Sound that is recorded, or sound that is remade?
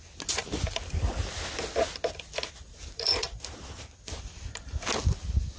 recorded